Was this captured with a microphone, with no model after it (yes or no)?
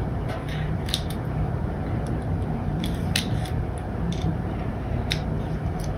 no